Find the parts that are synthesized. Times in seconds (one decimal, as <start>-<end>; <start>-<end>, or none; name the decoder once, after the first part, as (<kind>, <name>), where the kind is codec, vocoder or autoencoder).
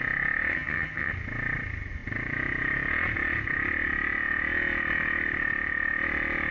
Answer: 0.5-1.1 (vocoder, HiFi-GAN)